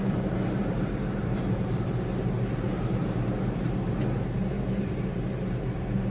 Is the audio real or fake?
fake